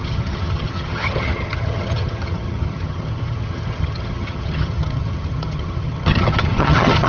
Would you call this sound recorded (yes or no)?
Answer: no